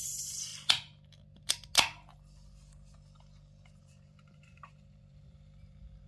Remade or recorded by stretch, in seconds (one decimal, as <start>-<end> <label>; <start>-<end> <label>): 0.0-0.5 remade; 0.5-3.8 recorded; 3.8-6.1 remade